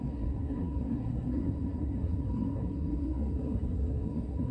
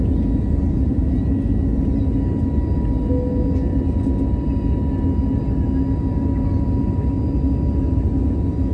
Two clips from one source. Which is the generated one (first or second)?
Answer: first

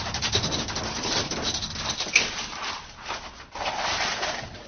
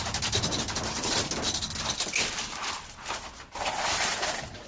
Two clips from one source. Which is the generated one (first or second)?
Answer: second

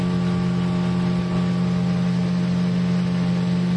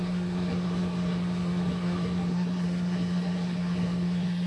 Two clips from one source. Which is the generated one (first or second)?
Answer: second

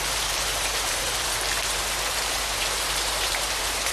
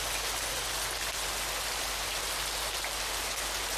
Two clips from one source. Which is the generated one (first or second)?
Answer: first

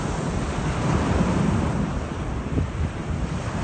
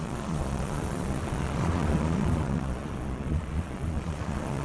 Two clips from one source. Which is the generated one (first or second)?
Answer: second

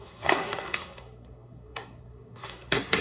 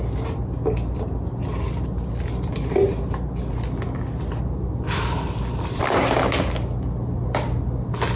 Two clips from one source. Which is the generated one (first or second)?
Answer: first